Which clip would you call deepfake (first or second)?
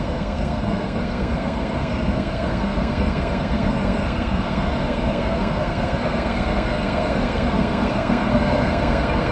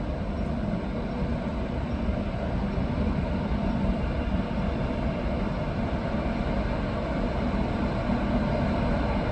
first